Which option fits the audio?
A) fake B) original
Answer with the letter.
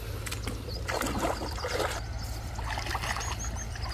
B